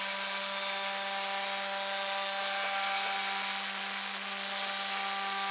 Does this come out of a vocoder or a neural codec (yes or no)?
no